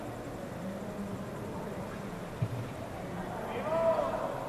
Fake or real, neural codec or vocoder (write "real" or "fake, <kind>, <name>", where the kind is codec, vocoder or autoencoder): real